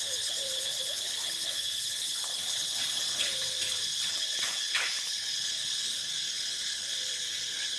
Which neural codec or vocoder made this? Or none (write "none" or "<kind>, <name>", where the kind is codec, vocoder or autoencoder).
codec, HILCodec